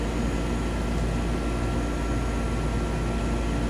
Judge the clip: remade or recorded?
recorded